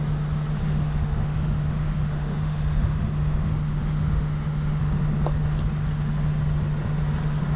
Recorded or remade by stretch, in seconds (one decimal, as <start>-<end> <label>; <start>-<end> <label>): 0.0-0.6 recorded; 0.6-4.8 remade; 4.8-7.6 recorded